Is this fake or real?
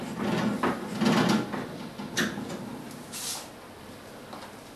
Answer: real